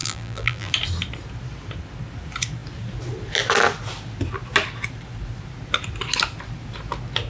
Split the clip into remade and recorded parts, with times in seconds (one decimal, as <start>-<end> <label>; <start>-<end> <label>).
0.0-0.7 remade; 0.7-7.3 recorded